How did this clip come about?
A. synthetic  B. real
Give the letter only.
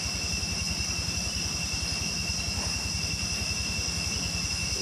B